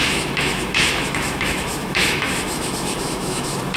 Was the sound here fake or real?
fake